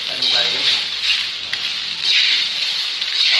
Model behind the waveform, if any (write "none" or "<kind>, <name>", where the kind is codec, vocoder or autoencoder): vocoder, BigVGAN v2